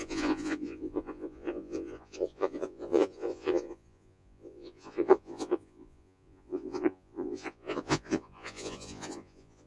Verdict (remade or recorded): remade